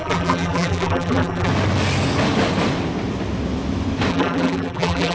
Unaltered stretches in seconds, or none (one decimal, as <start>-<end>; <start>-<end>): 1.5-4.1